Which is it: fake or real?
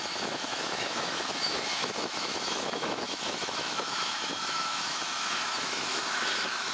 fake